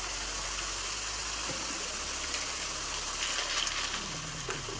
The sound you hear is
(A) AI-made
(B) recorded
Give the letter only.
B